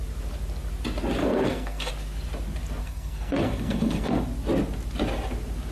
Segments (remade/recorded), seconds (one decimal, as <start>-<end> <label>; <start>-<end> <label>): 0.0-1.2 recorded; 1.2-1.9 remade; 1.9-2.8 recorded; 2.8-4.2 remade; 4.2-5.7 recorded